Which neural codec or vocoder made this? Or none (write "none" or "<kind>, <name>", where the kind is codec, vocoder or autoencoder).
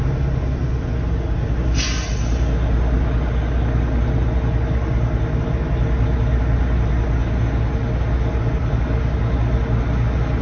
none